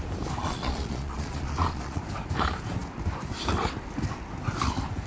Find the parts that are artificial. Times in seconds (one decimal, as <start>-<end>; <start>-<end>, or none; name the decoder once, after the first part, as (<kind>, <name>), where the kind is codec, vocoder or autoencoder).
0.4-2.0 (vocoder, Vocos)